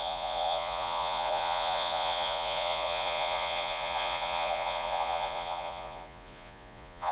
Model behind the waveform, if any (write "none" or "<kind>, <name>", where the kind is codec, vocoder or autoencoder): vocoder, Vocos